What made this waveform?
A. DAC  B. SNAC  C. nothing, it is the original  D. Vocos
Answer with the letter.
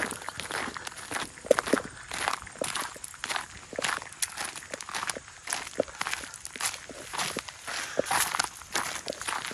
C